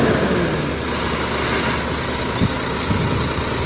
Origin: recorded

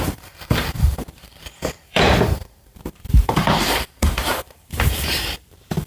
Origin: remade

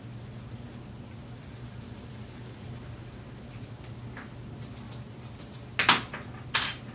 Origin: recorded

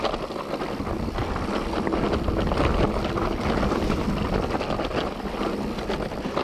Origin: recorded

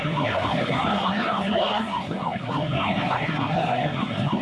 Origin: remade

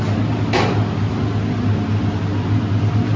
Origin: recorded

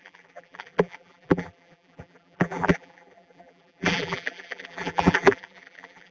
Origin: remade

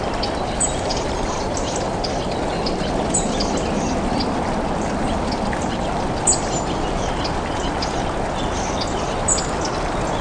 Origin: recorded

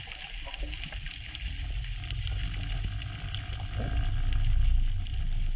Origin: recorded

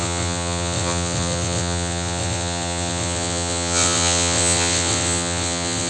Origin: remade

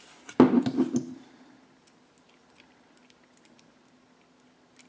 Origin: recorded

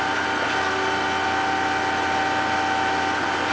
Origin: recorded